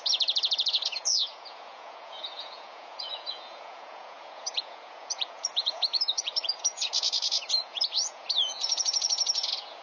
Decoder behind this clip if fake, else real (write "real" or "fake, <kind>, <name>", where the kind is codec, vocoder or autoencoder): fake, vocoder, Vocos